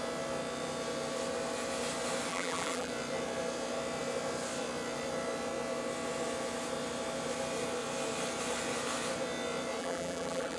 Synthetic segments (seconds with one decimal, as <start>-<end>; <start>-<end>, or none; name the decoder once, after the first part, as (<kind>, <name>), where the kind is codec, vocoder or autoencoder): 2.3-2.9 (vocoder, BigVGAN v2); 9.8-10.6